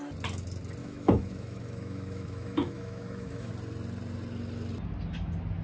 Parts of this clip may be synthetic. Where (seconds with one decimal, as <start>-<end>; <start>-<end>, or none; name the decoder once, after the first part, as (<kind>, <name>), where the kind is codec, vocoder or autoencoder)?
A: 0.8-3.5 (autoencoder, DAC-VAE)

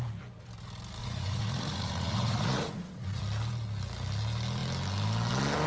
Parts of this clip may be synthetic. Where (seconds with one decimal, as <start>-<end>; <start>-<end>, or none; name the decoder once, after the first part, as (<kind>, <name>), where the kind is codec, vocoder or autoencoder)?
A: 1.0-3.2 (vocoder, Vocos)

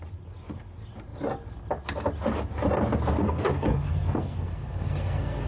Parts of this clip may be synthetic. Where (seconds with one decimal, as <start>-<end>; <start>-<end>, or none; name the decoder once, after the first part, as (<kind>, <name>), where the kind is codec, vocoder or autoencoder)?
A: 3.2-5.5 (codec, SNAC)

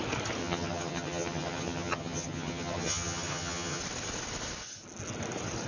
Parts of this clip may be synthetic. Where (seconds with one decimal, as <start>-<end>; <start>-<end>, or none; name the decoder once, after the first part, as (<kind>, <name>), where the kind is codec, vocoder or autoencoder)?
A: 0.4-3.8 (vocoder, HiFi-GAN)

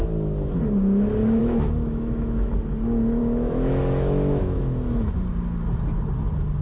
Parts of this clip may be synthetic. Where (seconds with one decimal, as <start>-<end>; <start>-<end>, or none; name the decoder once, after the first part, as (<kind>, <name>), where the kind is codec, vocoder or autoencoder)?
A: 1.4-2.5 (autoencoder, DAC-VAE); 3.2-5.1

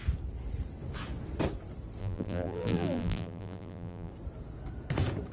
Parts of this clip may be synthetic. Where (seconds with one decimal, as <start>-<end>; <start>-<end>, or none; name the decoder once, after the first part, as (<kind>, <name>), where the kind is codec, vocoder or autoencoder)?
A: 2.0-4.1 (vocoder, BigVGAN v2)

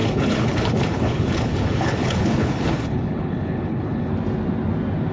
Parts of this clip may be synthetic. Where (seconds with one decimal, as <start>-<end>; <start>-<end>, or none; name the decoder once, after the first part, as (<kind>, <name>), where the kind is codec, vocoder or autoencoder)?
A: 0.0-4.1 (codec, HILCodec)